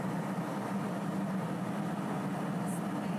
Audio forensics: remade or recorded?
recorded